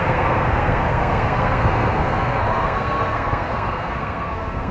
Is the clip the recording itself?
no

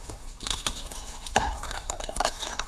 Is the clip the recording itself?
no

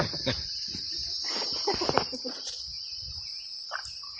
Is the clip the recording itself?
yes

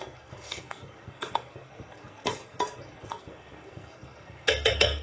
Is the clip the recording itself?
no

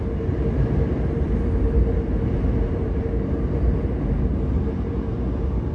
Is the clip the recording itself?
yes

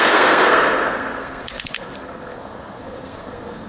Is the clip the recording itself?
no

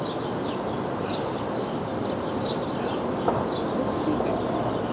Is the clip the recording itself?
yes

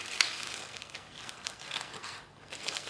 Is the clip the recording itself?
no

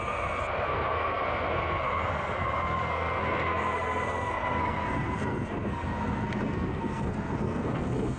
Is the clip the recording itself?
no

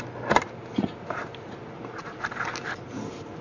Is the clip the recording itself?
yes